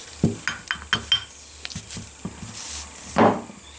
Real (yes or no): yes